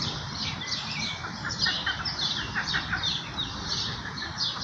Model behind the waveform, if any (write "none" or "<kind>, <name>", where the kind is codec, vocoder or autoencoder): vocoder, BigVGAN v2